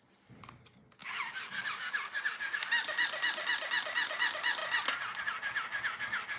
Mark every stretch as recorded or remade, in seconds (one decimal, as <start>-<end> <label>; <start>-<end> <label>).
0.0-6.4 recorded